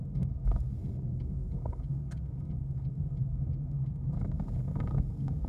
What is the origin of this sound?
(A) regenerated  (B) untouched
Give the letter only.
A